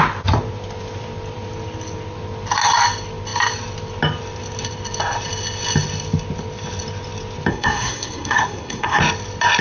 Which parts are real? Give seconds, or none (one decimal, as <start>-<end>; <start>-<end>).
0.0-7.5; 9.0-9.6